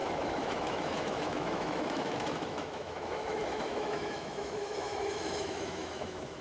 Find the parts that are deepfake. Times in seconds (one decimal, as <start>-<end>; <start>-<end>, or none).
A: 0.0-6.4